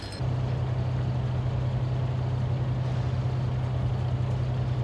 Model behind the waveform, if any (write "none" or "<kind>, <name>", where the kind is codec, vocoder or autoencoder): none